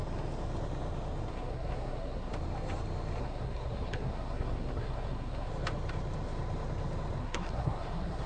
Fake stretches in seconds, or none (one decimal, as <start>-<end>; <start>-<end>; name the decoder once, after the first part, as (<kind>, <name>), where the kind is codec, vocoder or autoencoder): 1.3-2.3 (codec, SNAC); 3.2-5.5; 7.2-8.3

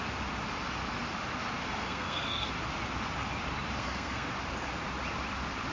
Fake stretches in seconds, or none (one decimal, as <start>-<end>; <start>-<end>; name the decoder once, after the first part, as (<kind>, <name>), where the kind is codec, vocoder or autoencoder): 1.6-2.5 (codec, SNAC); 3.8-4.3

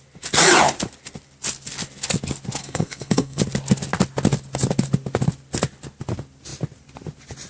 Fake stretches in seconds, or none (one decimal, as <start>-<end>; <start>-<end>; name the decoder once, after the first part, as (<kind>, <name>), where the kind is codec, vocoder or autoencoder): 2.6-3.4 (codec, SNAC)

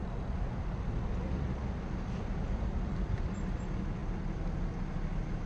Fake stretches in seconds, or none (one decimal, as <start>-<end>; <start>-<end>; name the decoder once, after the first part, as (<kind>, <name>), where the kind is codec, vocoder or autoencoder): none

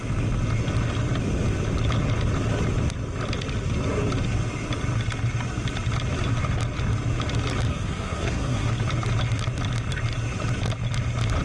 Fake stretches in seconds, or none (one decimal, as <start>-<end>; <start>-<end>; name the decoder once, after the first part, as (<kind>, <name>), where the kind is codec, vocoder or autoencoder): 7.7-8.7 (codec, SNAC)

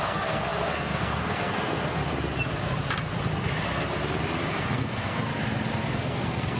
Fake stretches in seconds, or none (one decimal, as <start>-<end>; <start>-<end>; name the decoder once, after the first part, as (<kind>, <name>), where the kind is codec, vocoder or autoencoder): 0.0-2.0 (codec, SNAC); 4.5-5.3; 5.9-6.6

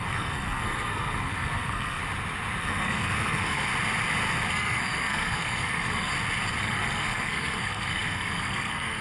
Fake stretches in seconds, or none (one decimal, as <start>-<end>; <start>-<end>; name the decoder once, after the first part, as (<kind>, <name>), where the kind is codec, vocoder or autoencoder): 0.0-2.0 (codec, SNAC); 2.6-3.7; 4.5-6.1; 6.6-9.0